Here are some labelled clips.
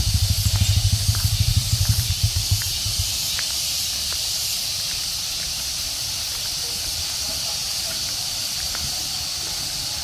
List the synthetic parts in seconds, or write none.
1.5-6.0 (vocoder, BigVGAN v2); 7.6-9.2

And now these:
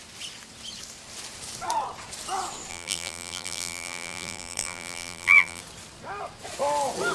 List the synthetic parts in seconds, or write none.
2.7-5.6 (vocoder, BigVGAN v2)

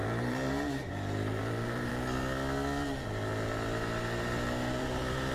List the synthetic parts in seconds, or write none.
0.0-1.9 (vocoder, BigVGAN v2); 4.8-5.3

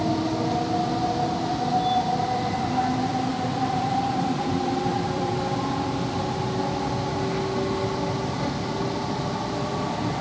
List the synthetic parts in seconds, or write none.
3.3-5.3 (vocoder, BigVGAN v2)

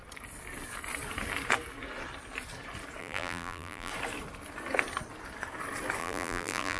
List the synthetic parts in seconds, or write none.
3.0-3.9 (vocoder, BigVGAN v2); 6.0-6.8

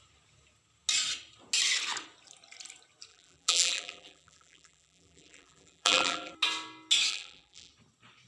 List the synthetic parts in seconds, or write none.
3.1-6.3 (vocoder, BigVGAN v2); 7.1-7.7